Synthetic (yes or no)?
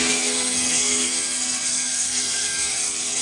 yes